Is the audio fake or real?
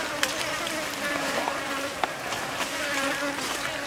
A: real